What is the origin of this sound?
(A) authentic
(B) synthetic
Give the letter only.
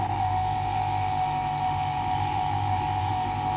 B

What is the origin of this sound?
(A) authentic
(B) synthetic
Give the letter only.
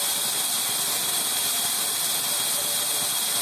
A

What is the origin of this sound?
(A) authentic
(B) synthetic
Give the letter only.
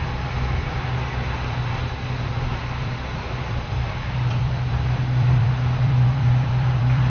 B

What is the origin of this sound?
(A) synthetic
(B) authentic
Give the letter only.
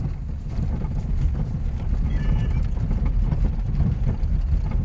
B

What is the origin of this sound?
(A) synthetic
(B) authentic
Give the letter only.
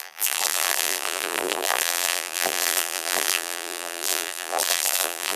A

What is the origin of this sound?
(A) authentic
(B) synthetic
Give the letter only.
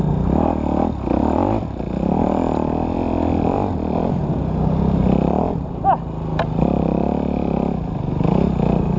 A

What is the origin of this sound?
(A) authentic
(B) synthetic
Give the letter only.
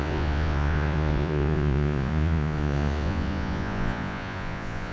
B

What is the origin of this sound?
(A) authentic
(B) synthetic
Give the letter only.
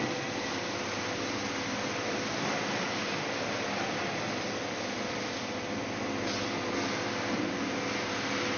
A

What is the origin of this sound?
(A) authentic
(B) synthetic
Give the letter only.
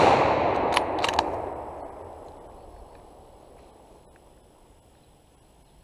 A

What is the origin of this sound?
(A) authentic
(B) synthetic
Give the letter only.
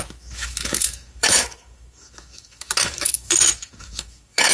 B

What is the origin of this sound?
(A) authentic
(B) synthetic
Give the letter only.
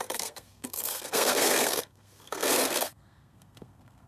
B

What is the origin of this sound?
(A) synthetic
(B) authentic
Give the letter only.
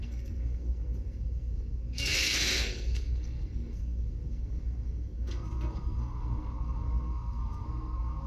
A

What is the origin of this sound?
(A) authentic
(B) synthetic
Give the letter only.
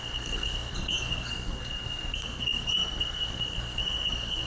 B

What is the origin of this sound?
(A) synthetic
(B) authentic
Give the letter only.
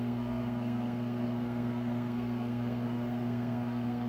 A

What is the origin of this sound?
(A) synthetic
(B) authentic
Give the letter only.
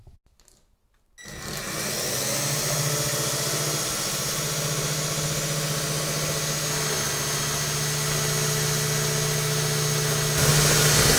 B